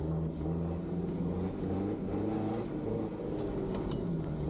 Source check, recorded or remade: recorded